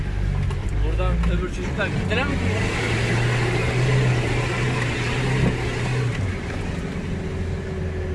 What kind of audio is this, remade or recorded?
recorded